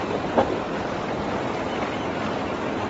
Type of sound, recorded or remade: recorded